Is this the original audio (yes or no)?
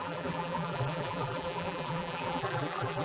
no